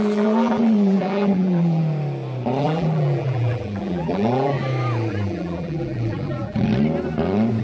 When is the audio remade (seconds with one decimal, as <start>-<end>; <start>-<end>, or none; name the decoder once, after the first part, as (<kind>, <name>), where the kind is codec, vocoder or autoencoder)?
0.0-1.8 (vocoder, BigVGAN v2); 2.6-4.6; 5.1-6.7